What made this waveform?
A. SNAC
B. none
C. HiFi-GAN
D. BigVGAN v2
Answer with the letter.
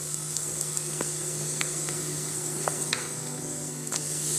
A